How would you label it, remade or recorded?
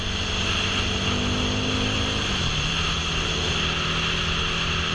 recorded